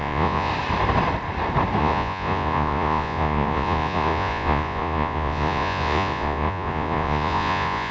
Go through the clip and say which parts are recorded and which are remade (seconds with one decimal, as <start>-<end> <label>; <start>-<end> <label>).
0.0-0.5 remade; 0.5-1.8 recorded; 1.8-7.9 remade